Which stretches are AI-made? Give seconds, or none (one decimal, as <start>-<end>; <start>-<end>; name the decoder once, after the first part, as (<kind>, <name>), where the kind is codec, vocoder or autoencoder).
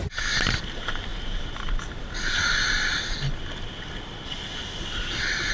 none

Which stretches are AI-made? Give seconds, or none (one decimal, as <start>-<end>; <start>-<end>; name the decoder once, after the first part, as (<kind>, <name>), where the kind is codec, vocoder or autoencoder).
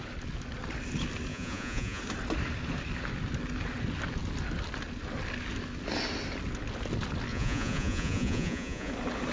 1.3-2.0 (vocoder, Vocos); 7.3-8.9